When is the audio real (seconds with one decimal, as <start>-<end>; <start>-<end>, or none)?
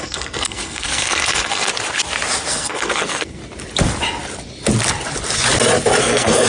1.7-2.5; 3.4-6.0